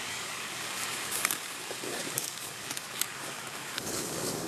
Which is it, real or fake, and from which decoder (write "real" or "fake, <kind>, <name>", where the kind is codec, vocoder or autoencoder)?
fake, codec, DAC